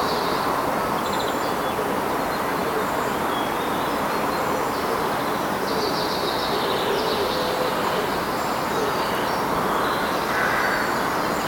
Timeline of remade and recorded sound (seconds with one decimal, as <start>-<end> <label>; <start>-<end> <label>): 0.0-11.5 recorded